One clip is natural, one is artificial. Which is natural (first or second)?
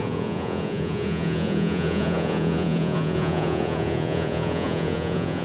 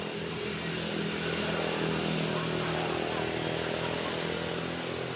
second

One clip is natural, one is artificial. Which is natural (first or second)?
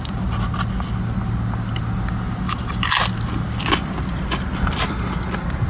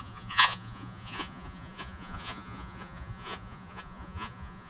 first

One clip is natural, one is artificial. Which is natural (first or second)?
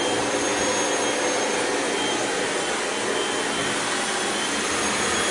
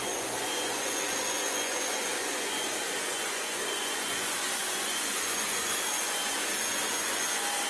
first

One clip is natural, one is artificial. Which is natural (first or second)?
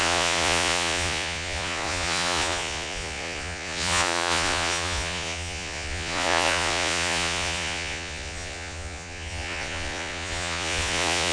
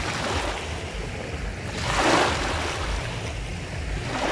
second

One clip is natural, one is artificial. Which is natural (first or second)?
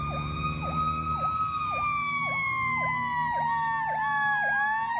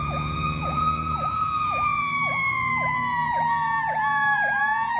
first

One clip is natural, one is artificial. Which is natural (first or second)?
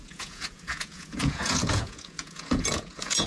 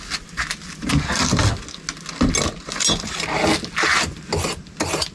second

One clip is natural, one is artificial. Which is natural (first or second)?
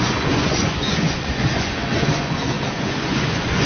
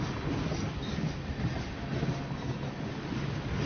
second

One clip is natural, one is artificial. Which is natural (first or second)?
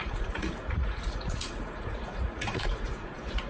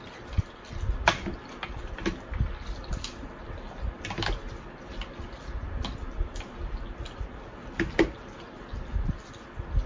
second